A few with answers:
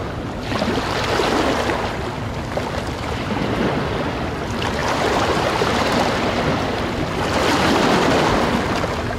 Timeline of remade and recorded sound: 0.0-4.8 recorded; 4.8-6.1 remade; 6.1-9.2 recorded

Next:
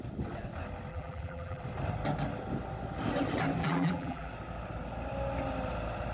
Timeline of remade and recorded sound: 0.0-0.9 recorded; 0.9-1.6 remade; 1.6-3.6 recorded; 3.6-4.3 remade; 4.3-6.1 recorded

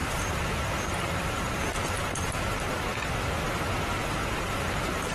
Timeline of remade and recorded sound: 0.0-3.4 remade; 3.4-4.0 recorded; 4.0-5.1 remade